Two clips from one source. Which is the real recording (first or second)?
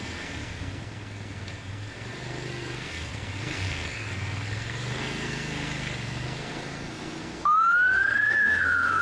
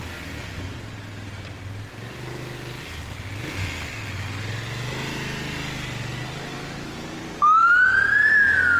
second